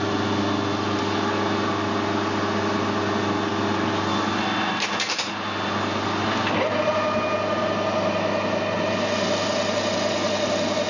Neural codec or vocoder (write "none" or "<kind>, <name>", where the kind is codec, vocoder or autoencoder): none